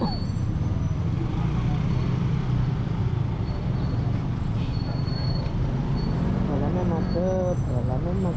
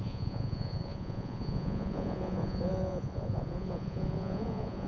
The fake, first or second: second